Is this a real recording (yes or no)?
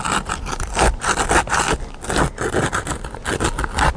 yes